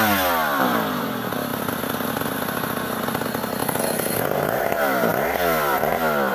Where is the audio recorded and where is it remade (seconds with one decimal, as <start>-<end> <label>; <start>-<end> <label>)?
0.0-6.3 recorded